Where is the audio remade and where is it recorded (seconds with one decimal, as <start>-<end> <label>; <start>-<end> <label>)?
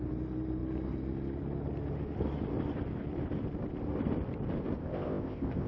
0.0-4.8 recorded; 4.8-5.7 remade